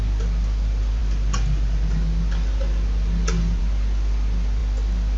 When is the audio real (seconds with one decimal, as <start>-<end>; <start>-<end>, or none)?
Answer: 0.0-5.2